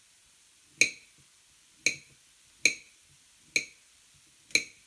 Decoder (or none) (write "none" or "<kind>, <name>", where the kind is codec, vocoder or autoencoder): none